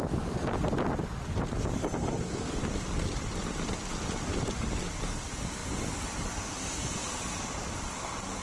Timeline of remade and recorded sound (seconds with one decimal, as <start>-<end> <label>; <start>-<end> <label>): 0.0-1.8 recorded; 1.8-2.6 remade; 2.6-8.4 recorded